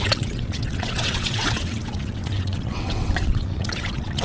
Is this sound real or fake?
fake